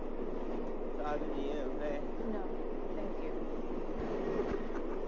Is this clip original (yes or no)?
yes